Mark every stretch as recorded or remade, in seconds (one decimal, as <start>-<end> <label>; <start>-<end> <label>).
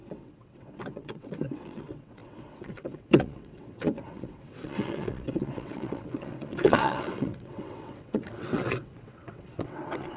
0.0-10.2 remade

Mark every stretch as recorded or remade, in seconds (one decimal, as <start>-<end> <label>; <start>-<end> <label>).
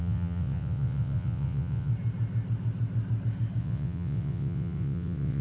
0.0-1.9 remade; 1.9-3.6 recorded; 3.6-5.4 remade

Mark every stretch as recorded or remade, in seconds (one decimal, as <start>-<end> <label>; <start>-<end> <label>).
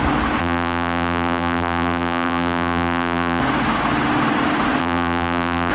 0.0-0.4 recorded; 0.4-3.4 remade; 3.4-4.8 recorded; 4.8-5.7 remade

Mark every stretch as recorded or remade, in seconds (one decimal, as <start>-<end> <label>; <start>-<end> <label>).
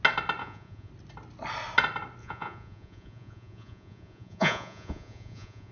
0.0-0.4 recorded; 0.4-0.9 remade; 0.9-2.2 recorded; 2.2-5.7 remade